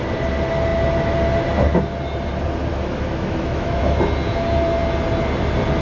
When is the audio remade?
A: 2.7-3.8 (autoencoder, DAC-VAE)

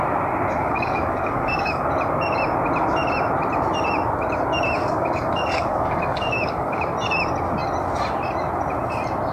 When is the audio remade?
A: 0.6-1.8 (codec, DAC); 4.8-6.8

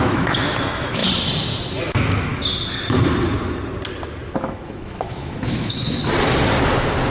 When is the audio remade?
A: 0.0-1.0 (autoencoder, DAC-VAE); 1.8-2.3; 4.4-6.0